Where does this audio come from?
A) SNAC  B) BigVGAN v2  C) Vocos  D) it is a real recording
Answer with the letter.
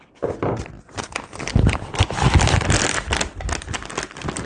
D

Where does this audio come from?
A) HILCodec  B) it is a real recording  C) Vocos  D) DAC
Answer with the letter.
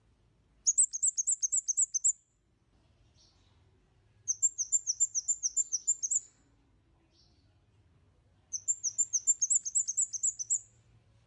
B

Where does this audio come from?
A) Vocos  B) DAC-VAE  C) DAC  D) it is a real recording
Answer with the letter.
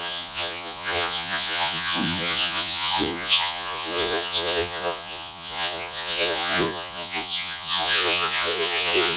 A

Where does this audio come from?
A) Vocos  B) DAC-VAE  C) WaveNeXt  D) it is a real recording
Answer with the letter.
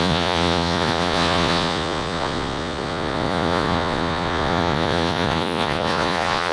A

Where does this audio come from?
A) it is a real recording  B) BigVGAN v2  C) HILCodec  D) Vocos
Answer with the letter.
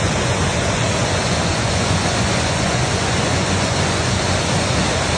D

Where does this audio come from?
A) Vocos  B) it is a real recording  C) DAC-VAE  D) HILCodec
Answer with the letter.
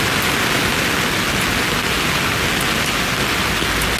B